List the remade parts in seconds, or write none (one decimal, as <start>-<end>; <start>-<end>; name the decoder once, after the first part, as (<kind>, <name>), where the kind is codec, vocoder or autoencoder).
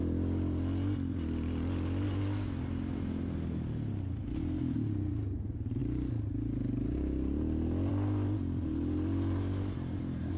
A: none